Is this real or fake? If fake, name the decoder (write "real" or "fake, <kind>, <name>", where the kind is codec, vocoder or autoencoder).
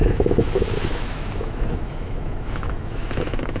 fake, autoencoder, DAC-VAE